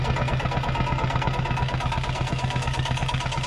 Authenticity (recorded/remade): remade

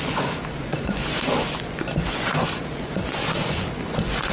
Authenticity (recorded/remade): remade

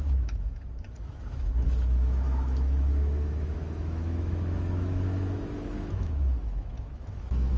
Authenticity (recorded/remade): remade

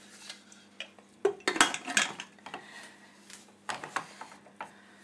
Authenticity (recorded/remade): recorded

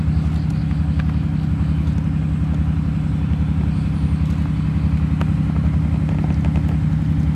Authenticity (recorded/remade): recorded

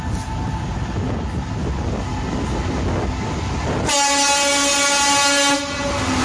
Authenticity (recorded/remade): recorded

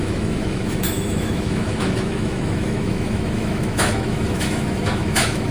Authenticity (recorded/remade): remade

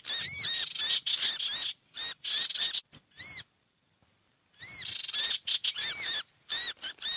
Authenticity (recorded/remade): recorded